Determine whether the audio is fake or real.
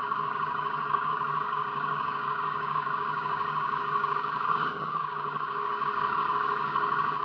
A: fake